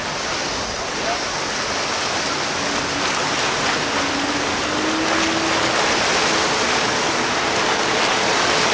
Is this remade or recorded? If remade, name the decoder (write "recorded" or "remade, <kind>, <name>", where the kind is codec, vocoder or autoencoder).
recorded